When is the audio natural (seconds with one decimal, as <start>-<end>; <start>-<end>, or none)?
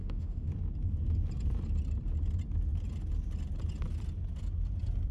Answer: 0.5-5.1